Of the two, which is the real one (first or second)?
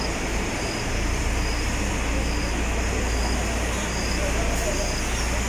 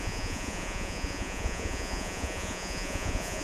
first